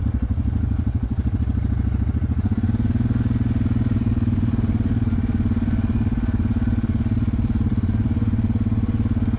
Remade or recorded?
recorded